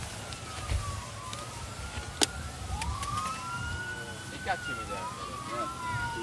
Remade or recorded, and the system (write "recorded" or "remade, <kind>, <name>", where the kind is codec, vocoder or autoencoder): recorded